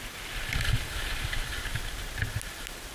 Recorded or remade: recorded